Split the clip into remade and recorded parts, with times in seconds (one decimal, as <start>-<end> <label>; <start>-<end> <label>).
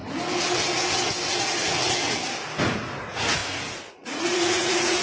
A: 0.0-2.6 recorded; 2.6-3.4 remade; 3.4-3.9 recorded; 3.9-5.0 remade